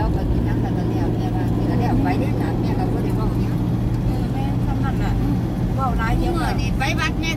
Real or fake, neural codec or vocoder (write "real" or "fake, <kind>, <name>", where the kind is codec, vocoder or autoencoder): real